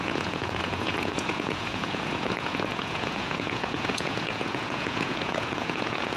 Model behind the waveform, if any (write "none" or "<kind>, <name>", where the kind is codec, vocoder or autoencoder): vocoder, Vocos